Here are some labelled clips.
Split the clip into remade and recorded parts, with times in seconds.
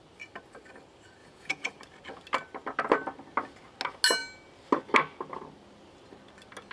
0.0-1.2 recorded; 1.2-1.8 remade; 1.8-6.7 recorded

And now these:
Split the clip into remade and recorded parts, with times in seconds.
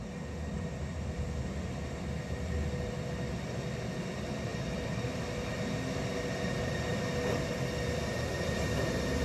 0.0-9.2 recorded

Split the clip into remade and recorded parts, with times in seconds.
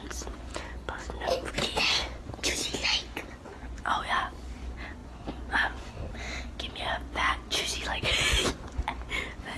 0.0-9.6 remade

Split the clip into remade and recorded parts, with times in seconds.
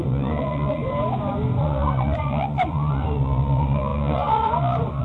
0.0-0.8 remade; 0.8-1.6 recorded; 1.6-5.0 remade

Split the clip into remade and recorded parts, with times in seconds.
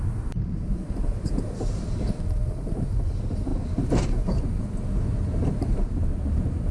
0.0-2.4 remade; 2.4-3.0 recorded; 3.0-6.7 remade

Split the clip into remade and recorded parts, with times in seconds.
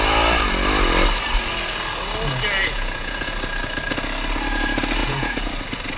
0.0-2.6 recorded; 2.6-3.3 remade; 3.3-5.0 recorded; 5.0-5.5 remade; 5.5-6.0 recorded